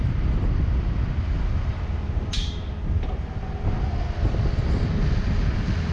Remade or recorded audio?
recorded